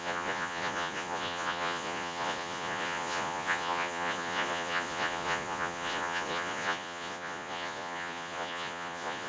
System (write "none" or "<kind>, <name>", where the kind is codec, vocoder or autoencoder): vocoder, Vocos